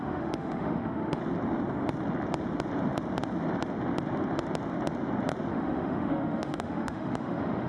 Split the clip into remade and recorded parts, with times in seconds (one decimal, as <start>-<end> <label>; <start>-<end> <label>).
0.0-1.2 remade; 1.2-5.5 recorded; 5.5-7.7 remade